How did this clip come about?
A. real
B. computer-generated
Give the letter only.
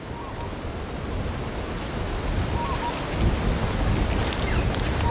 A